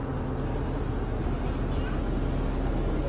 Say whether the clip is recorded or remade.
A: recorded